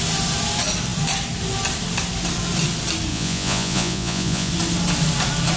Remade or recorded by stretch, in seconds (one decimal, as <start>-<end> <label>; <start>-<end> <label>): 0.0-3.1 recorded; 3.1-4.5 remade; 4.5-5.6 recorded